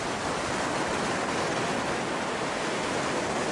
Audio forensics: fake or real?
real